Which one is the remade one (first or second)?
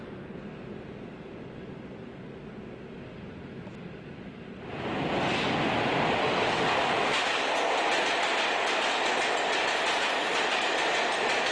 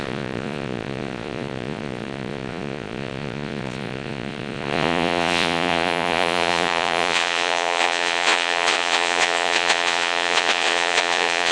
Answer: second